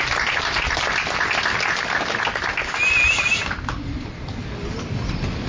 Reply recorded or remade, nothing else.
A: recorded